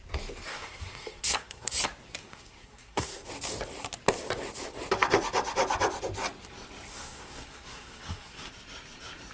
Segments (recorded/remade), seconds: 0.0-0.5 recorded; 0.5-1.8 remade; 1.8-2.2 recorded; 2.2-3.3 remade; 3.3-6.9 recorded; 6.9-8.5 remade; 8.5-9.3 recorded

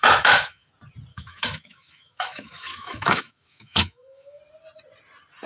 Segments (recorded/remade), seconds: 0.0-0.7 remade; 0.7-1.1 recorded; 1.1-4.4 remade; 4.4-5.5 recorded

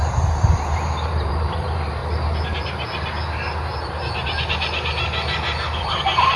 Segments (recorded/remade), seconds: 0.0-2.0 remade; 2.0-5.8 recorded; 5.8-6.4 remade

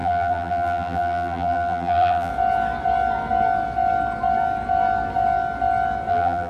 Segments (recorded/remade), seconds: 0.0-2.3 remade; 2.3-6.1 recorded; 6.1-6.5 remade

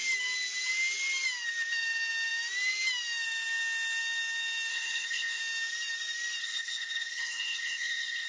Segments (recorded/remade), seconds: 0.0-4.7 recorded; 4.7-5.4 remade; 5.4-6.4 recorded; 6.4-8.3 remade

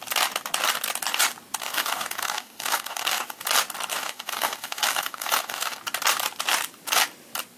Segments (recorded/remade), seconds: 0.0-1.6 recorded; 1.6-3.4 remade; 3.4-3.9 recorded; 3.9-5.8 remade; 5.8-7.6 recorded

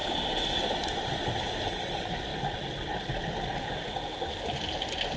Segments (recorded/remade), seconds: 0.0-5.2 recorded

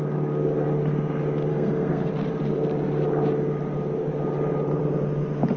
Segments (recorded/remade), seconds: 0.0-1.5 recorded; 1.5-2.1 remade; 2.1-5.6 recorded